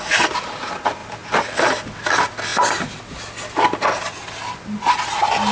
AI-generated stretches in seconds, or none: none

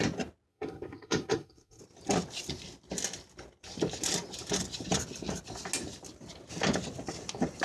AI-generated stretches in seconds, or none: 0.5-1.8 (codec, SNAC)

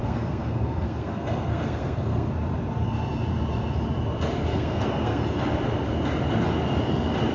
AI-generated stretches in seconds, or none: 0.0-2.3 (codec, SNAC); 4.5-5.2

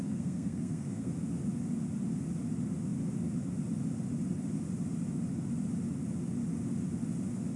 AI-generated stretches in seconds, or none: 0.0-1.1 (codec, SNAC)